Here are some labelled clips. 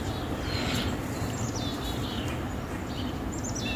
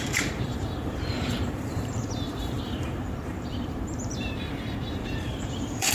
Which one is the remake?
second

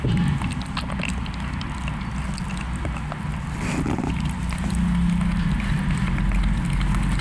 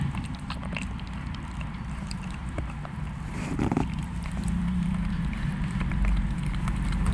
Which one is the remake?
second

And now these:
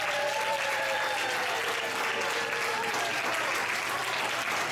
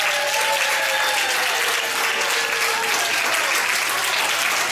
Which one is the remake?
first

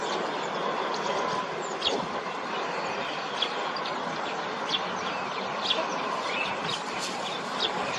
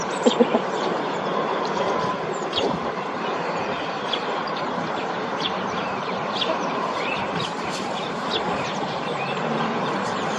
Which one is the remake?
second